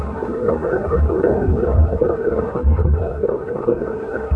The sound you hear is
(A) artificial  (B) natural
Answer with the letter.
A